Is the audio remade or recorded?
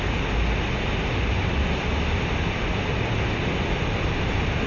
recorded